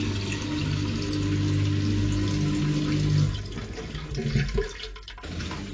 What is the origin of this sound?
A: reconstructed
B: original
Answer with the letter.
B